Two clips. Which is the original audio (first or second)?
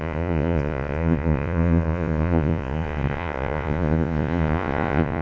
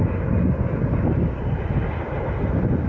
second